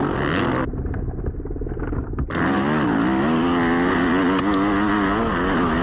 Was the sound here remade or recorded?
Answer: recorded